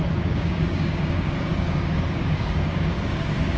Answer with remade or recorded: remade